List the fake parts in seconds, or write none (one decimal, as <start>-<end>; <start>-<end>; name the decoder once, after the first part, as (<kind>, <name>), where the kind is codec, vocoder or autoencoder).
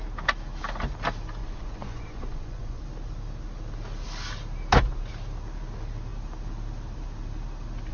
1.4-2.8 (vocoder, Vocos)